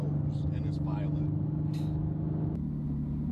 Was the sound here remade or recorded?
recorded